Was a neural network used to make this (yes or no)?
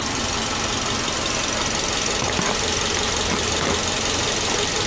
no